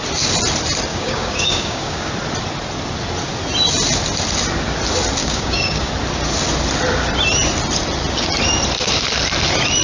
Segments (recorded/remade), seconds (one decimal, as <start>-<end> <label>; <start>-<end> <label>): 0.0-0.9 recorded; 0.9-2.1 remade; 2.1-5.2 recorded; 5.2-5.9 remade; 5.9-9.8 recorded

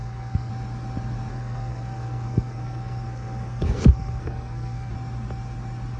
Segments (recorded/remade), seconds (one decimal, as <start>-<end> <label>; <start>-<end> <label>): 0.0-0.5 remade; 0.5-1.3 recorded; 1.3-4.9 remade; 4.9-6.0 recorded

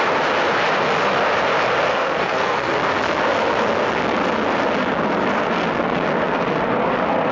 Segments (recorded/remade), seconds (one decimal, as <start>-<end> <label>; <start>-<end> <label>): 0.0-1.9 recorded; 1.9-2.7 remade; 2.7-7.3 recorded